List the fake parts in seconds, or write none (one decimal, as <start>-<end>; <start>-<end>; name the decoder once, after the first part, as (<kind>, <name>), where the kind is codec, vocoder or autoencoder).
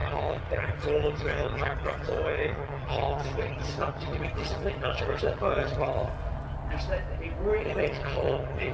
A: 0.0-6.1 (vocoder, HiFi-GAN); 7.6-8.7